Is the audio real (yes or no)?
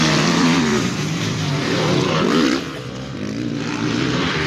no